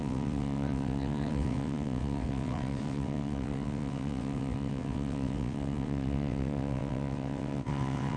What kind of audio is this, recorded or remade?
remade